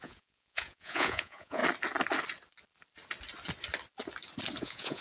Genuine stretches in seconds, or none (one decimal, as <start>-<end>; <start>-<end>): 1.6-4.6